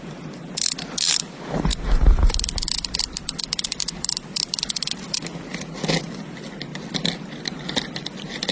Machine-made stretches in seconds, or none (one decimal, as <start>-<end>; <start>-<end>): none